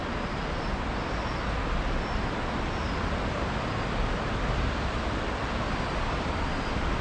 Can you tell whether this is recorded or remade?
recorded